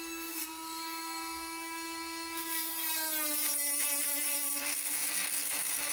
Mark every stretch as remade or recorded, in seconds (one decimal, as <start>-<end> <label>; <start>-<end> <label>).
0.0-2.7 remade; 2.7-4.3 recorded; 4.3-5.9 remade